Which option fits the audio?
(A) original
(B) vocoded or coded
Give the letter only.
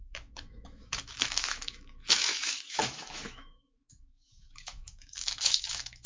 B